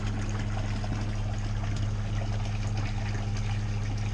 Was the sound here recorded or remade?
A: recorded